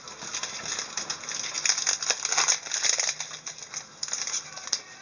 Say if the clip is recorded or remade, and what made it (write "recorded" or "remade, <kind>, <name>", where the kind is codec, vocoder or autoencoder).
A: recorded